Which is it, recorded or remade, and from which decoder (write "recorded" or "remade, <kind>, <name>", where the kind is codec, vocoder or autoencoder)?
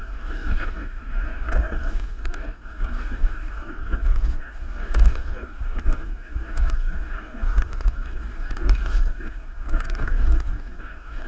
remade, codec, DAC